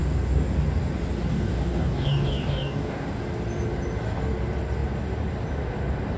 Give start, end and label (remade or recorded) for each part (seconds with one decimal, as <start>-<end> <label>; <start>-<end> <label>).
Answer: 0.0-1.3 recorded; 1.3-3.2 remade; 3.2-6.2 recorded